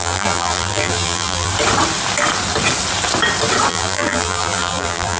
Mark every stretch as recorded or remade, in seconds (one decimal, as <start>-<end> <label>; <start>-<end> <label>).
0.0-1.5 remade; 1.5-3.7 recorded; 3.7-5.2 remade